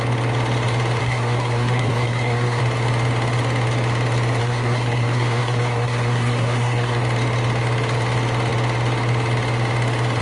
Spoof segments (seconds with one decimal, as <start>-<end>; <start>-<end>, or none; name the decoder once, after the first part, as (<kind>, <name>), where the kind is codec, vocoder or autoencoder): 1.0-2.6 (codec, SNAC); 4.4-7.0